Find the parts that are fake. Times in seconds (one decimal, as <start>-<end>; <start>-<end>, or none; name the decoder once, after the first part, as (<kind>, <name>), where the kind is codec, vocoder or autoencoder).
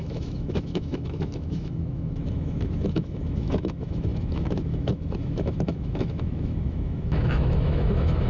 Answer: 0.0-8.3 (autoencoder, DAC-VAE)